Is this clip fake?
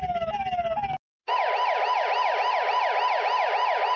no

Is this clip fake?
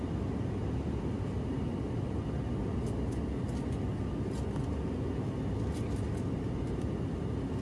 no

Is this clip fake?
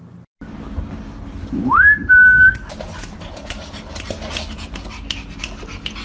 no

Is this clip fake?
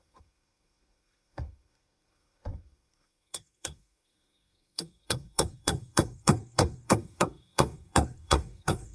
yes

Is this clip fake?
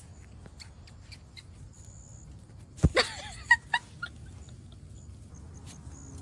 no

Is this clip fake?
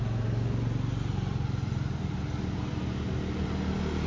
no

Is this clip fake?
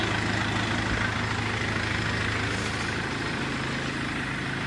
no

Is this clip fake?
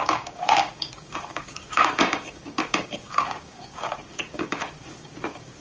yes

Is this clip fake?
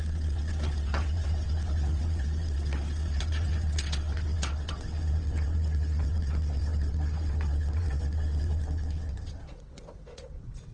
yes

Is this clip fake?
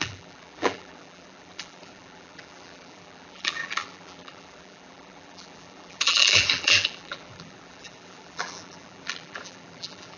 yes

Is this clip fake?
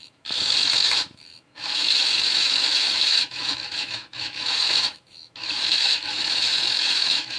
yes